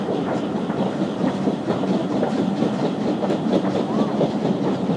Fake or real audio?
fake